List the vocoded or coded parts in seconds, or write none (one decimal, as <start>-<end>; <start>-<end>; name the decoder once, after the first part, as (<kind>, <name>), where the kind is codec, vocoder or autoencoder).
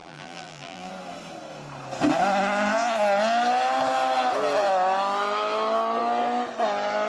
0.0-0.9 (vocoder, BigVGAN v2)